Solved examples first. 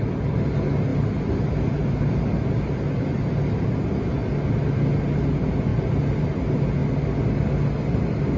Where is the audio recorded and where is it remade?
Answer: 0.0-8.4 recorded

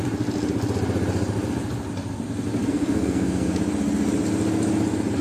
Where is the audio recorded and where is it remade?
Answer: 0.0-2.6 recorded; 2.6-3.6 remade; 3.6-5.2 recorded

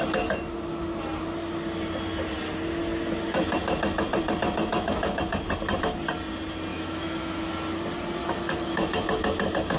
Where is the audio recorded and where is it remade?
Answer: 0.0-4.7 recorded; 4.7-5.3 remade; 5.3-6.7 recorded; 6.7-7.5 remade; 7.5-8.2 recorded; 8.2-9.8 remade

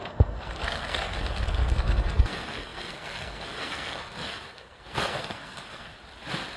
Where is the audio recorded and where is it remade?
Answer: 0.0-5.9 remade; 5.9-6.6 recorded

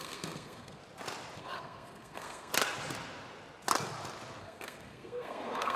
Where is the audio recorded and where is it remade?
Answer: 0.0-0.8 remade; 0.8-1.4 recorded; 1.4-2.5 remade; 2.5-4.4 recorded; 4.4-5.8 remade

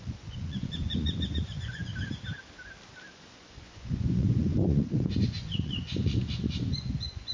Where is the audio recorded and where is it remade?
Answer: 0.0-1.9 remade; 1.9-3.1 recorded; 3.1-7.3 remade

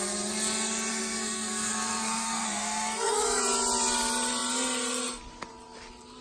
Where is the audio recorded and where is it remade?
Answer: 0.0-0.9 recorded; 0.9-3.4 remade; 3.4-6.2 recorded